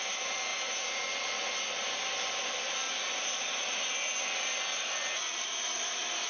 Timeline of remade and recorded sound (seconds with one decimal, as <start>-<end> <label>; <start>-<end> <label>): 0.0-6.3 recorded

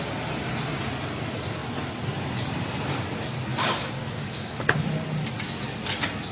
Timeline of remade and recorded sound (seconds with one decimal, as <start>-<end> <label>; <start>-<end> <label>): 0.0-3.5 recorded; 3.5-4.6 remade; 4.6-6.3 recorded

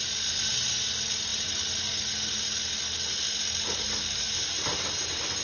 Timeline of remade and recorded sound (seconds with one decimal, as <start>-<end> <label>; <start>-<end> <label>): 0.0-5.4 recorded

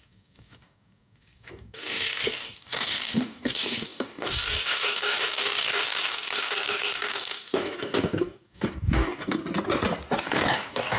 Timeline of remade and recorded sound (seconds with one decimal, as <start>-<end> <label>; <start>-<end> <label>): 0.0-9.4 remade; 9.4-10.2 recorded; 10.2-11.0 remade

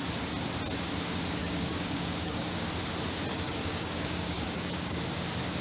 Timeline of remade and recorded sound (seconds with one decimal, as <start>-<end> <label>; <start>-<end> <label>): 0.0-1.4 recorded; 1.4-2.7 remade; 2.7-3.3 recorded; 3.3-5.0 remade; 5.0-5.6 recorded

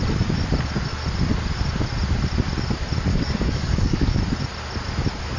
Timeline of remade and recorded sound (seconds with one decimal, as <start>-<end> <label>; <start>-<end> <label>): 0.0-3.1 recorded; 3.1-4.2 remade; 4.2-5.4 recorded

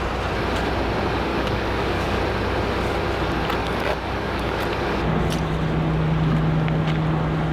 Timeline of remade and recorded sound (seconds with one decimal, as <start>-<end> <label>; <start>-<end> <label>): 0.0-1.3 recorded; 1.3-2.2 remade; 2.2-3.6 recorded; 3.6-4.6 remade; 4.6-7.5 recorded

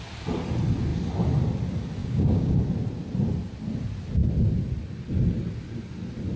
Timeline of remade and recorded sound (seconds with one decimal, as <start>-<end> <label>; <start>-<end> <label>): 0.0-2.0 recorded; 2.0-2.6 remade; 2.6-6.4 recorded